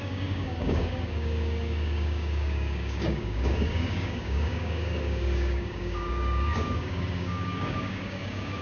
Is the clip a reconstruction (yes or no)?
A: yes